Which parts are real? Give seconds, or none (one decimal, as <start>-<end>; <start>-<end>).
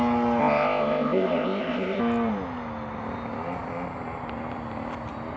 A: 0.0-0.4; 2.0-5.4